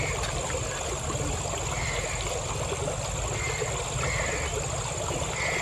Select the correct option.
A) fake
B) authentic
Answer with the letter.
B